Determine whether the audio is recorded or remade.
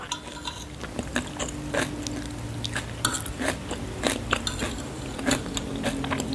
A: recorded